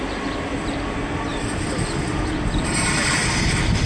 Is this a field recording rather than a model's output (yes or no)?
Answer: yes